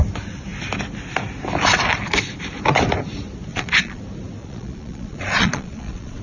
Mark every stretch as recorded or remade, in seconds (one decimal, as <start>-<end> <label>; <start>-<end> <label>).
0.0-3.5 recorded; 3.5-4.0 remade; 4.0-4.4 recorded; 4.4-6.2 remade